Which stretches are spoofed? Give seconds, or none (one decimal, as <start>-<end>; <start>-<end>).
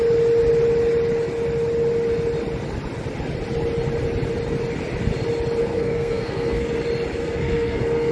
5.6-6.7; 7.2-8.1